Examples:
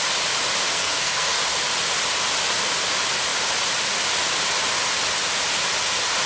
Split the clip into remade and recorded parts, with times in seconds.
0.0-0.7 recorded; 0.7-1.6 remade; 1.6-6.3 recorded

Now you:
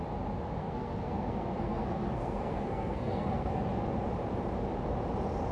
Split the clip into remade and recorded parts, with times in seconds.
0.0-0.6 recorded; 0.6-3.6 remade; 3.6-5.5 recorded